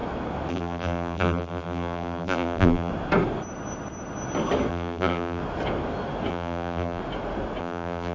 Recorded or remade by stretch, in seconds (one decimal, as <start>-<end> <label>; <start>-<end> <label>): 0.0-0.5 recorded; 0.5-2.9 remade; 2.9-4.7 recorded; 4.7-5.4 remade; 5.4-6.3 recorded; 6.3-7.0 remade; 7.0-7.6 recorded; 7.6-8.1 remade